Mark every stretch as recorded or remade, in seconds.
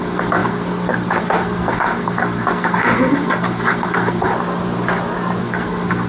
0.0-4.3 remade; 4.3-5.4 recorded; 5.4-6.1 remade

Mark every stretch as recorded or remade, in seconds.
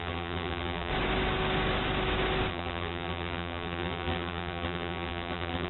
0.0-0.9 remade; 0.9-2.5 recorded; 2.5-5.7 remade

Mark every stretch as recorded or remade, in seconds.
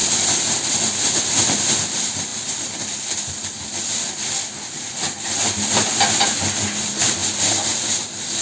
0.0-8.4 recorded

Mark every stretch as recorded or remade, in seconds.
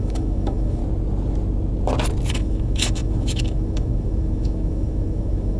0.0-0.8 remade; 0.8-2.3 recorded; 2.3-5.6 remade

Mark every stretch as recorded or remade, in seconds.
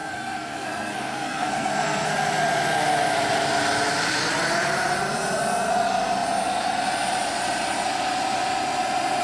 0.0-2.1 remade; 2.1-9.2 recorded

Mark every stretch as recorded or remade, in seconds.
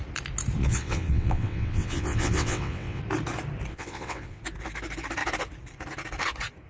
0.0-0.6 recorded; 0.6-3.0 remade; 3.0-3.7 recorded; 3.7-4.4 remade; 4.4-6.7 recorded